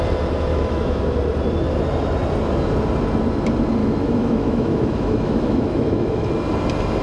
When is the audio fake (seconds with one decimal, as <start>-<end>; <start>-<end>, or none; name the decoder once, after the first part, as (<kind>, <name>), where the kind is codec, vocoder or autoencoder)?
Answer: 0.5-1.0 (autoencoder, DAC-VAE); 3.8-6.3